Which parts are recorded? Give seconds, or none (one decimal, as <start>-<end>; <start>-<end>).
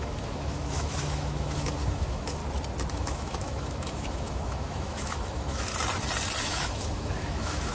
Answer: 2.4-2.9; 5.7-6.4